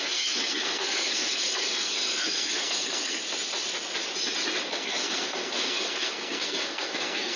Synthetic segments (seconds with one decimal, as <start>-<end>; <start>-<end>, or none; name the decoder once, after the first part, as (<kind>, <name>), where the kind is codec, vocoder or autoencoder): 0.0-3.2 (codec, SNAC); 4.6-7.4